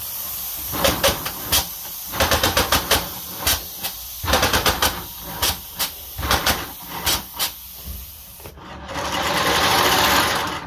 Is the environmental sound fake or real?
fake